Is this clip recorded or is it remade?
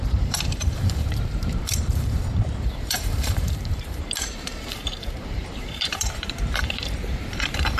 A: remade